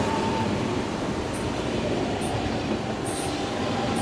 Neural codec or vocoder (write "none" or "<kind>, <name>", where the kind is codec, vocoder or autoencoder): none